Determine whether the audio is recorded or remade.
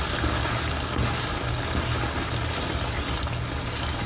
recorded